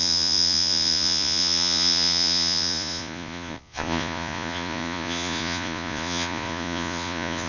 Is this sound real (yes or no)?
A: no